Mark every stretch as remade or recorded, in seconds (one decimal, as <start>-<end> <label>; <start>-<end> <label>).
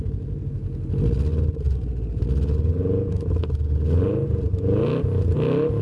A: 0.0-1.3 recorded; 1.3-2.2 remade; 2.2-5.8 recorded